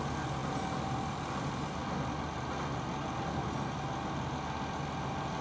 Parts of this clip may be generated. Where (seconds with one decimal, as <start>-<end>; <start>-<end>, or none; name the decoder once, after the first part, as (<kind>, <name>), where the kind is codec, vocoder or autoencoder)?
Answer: none